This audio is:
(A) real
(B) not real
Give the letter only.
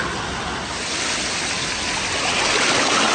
A